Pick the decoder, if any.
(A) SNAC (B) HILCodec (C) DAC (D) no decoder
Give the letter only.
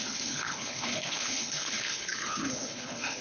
B